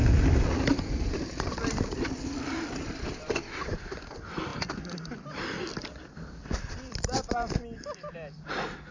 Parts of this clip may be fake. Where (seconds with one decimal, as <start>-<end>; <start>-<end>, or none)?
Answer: 0.0-8.9